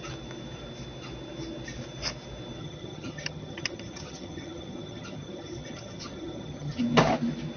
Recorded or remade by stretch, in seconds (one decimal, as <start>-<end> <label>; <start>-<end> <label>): 0.0-2.6 recorded; 2.6-6.8 remade; 6.8-7.6 recorded